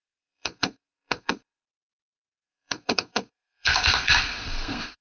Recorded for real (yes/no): no